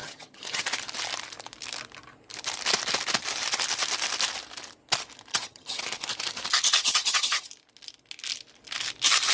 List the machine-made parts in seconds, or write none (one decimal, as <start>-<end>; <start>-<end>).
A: 0.0-0.6; 5.3-5.8; 6.8-7.5